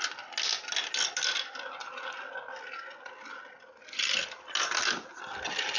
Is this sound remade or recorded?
recorded